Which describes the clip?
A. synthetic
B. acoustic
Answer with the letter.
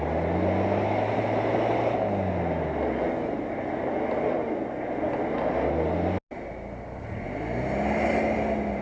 B